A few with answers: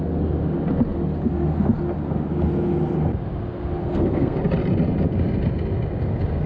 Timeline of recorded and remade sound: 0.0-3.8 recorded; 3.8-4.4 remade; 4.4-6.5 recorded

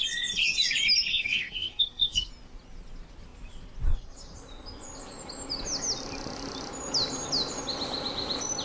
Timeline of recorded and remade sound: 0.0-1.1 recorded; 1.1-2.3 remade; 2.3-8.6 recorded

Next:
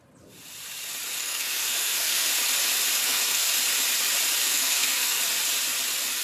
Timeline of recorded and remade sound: 0.0-1.2 recorded; 1.2-2.3 remade; 2.3-3.0 recorded; 3.0-3.5 remade; 3.5-4.4 recorded; 4.4-5.2 remade; 5.2-6.2 recorded

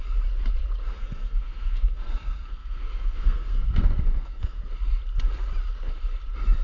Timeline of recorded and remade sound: 0.0-0.9 recorded; 0.9-4.6 remade; 4.6-6.6 recorded

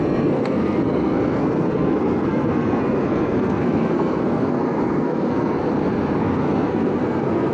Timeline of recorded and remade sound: 0.0-5.6 remade; 5.6-6.2 recorded; 6.2-7.5 remade

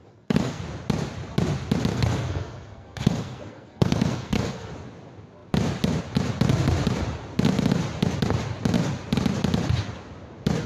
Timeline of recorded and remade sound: 0.0-0.6 remade; 0.6-1.9 recorded; 1.9-4.7 remade; 4.7-10.7 recorded